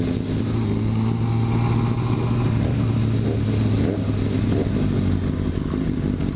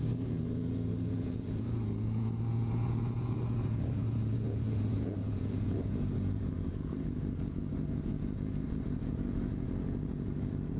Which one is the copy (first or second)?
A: second